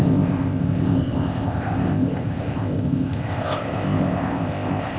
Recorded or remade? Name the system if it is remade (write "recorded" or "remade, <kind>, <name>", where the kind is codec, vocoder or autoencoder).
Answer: remade, codec, ZipCodec